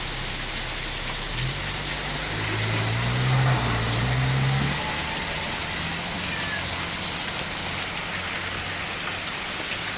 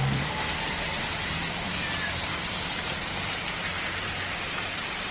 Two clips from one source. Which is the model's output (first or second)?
second